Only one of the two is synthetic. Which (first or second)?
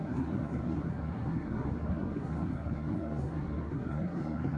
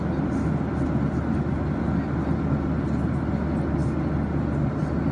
first